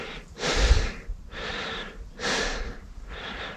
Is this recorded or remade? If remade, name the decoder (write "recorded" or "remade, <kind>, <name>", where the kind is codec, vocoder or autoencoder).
recorded